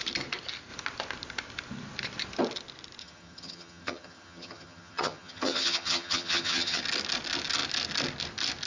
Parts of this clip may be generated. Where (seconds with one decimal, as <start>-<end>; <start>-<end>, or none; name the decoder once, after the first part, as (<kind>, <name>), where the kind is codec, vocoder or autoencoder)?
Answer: 3.0-6.8 (vocoder, HiFi-GAN)